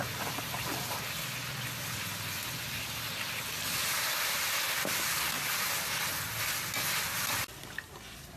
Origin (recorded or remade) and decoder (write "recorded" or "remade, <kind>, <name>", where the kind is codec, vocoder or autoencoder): recorded